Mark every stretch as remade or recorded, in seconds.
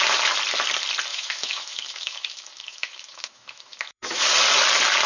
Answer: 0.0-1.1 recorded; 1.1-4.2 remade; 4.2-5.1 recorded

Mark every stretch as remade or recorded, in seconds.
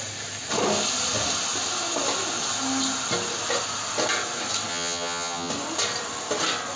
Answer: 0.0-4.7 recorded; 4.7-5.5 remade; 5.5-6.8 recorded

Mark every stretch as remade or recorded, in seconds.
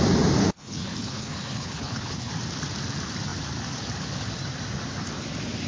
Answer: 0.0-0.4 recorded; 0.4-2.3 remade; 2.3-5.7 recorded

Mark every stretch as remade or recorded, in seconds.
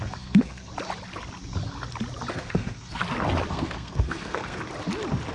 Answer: 0.0-0.7 remade; 0.7-2.3 recorded; 2.3-3.0 remade; 3.0-3.5 recorded; 3.5-4.6 remade; 4.6-5.3 recorded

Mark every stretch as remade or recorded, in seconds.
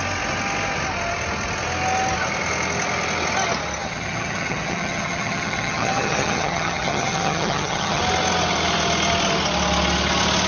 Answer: 0.0-3.8 recorded; 3.8-8.0 remade; 8.0-10.5 recorded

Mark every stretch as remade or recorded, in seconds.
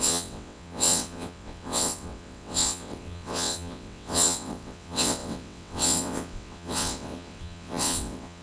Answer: 0.0-8.4 remade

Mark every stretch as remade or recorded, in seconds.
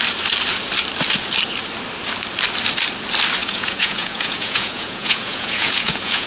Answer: 0.0-3.4 recorded; 3.4-6.3 remade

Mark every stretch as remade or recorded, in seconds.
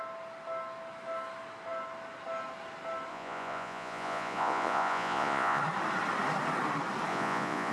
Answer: 0.0-3.1 recorded; 3.1-5.6 remade; 5.6-7.1 recorded; 7.1-7.7 remade